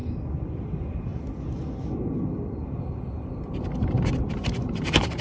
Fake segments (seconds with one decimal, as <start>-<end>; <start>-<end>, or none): 0.6-1.1; 4.2-5.2